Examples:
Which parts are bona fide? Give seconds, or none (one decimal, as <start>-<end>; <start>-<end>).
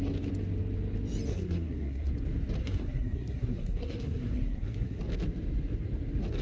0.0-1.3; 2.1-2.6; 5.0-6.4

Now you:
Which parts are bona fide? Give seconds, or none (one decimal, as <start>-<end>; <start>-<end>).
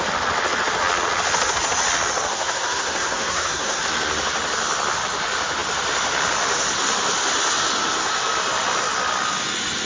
0.0-2.3; 3.8-9.9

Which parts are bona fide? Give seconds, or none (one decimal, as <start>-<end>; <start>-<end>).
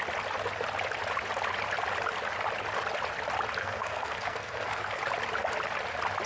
0.0-3.6; 5.0-6.3